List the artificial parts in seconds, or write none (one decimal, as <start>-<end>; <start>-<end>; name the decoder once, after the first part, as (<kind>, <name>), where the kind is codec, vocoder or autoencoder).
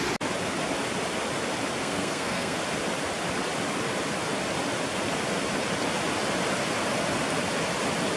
1.8-2.6 (codec, SNAC)